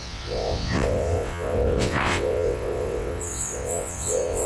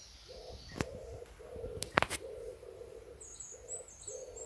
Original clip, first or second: second